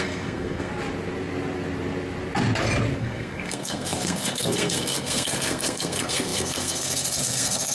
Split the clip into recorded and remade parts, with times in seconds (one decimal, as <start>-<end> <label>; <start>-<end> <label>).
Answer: 0.0-0.7 remade; 0.7-3.0 recorded; 3.0-7.7 remade